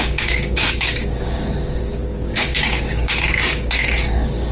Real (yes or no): no